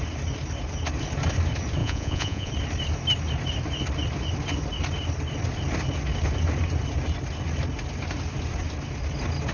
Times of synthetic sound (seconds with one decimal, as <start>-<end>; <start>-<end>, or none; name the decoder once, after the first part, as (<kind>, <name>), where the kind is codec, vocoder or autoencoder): 1.8-2.5 (vocoder, Vocos)